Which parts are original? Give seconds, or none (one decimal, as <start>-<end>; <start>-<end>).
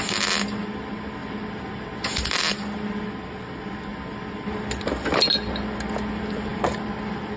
0.0-7.4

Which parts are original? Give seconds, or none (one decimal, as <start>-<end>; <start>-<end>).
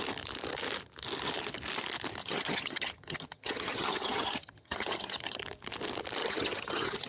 0.0-2.2; 5.4-6.2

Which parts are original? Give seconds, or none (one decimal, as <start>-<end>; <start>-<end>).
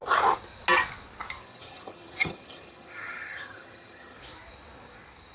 0.0-1.4; 4.2-5.3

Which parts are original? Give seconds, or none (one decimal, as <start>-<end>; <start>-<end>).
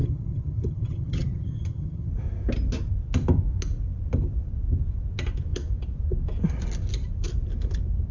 2.1-8.1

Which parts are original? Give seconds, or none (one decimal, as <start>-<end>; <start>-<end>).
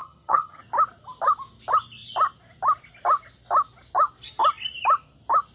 0.6-5.5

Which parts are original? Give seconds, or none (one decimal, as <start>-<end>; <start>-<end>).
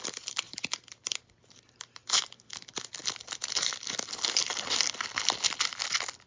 0.0-6.3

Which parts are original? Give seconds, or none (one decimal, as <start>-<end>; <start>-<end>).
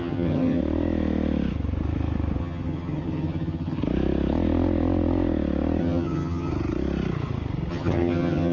0.6-2.4; 3.8-5.8; 6.5-7.7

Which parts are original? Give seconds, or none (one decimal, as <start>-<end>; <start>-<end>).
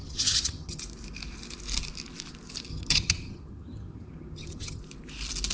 0.8-2.7; 4.8-5.5